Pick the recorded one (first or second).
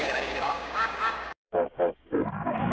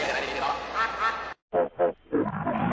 second